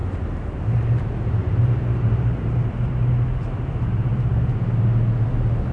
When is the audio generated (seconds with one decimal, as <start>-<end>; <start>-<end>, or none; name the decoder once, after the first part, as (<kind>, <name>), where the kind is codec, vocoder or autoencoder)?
0.0-0.6 (vocoder, BigVGAN v2); 1.4-4.8